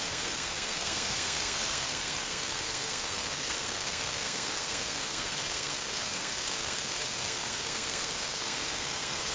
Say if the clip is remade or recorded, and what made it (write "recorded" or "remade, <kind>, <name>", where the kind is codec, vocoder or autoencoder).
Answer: remade, codec, SNAC